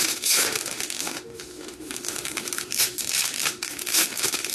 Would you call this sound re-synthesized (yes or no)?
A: yes